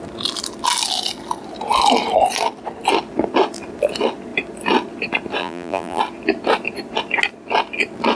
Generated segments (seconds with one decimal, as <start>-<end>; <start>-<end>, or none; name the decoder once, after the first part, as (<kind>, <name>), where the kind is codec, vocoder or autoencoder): 5.4-6.0 (vocoder, BigVGAN v2)